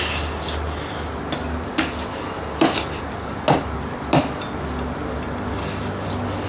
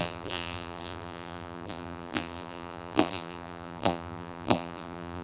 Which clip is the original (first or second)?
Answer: first